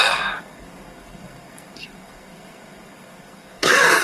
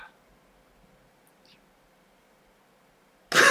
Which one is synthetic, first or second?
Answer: first